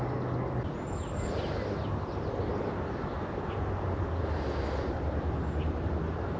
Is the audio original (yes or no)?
yes